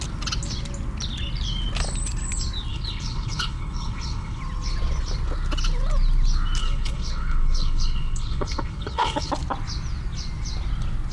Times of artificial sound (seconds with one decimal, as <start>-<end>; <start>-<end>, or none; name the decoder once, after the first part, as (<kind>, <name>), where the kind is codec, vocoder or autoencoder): 2.7-4.4 (codec, HILCodec); 6.6-9.3